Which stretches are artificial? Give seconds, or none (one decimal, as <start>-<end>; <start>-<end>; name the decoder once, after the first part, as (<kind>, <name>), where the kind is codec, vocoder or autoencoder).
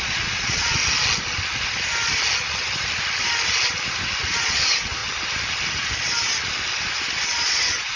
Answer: 0.0-0.8 (vocoder, Vocos); 4.2-5.0; 7.3-8.0